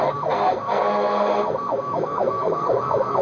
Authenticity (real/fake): fake